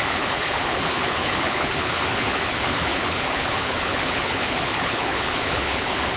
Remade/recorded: remade